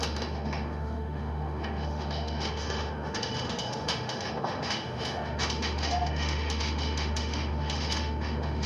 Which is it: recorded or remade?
remade